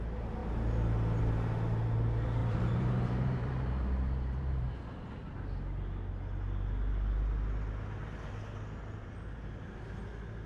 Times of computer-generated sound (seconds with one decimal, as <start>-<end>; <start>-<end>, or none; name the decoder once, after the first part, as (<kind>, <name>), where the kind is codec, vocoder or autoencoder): 2.4-4.7 (vocoder, BigVGAN v2)